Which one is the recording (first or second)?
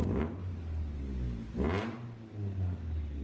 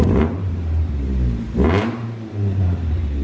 first